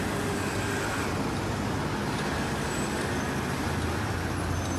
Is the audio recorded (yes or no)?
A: yes